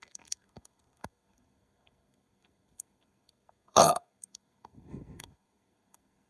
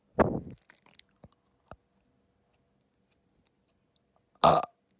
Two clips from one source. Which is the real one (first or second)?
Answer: second